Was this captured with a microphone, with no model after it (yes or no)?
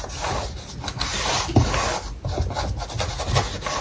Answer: yes